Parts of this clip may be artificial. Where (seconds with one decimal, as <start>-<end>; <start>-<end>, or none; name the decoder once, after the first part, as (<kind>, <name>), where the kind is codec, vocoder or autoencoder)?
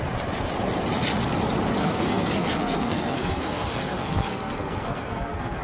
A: 1.8-5.6 (codec, SNAC)